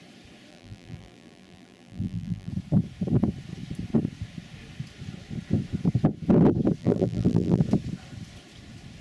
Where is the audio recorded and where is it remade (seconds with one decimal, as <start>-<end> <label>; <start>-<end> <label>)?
0.0-0.5 recorded; 0.5-2.5 remade; 2.5-6.8 recorded; 6.8-7.6 remade; 7.6-9.0 recorded